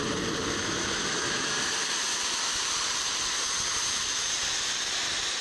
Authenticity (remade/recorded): recorded